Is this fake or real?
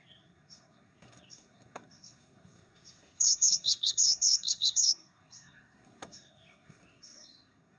fake